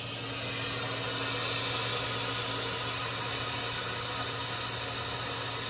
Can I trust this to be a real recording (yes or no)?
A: yes